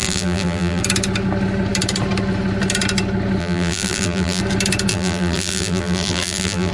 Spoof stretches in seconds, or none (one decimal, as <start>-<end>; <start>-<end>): 0.0-0.8; 3.4-4.4; 4.9-6.7